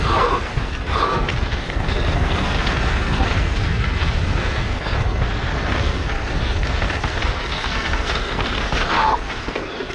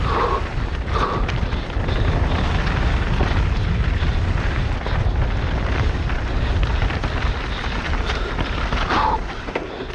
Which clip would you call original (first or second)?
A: second